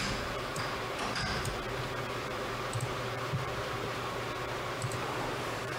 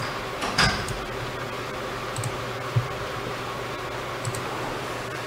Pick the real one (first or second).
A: second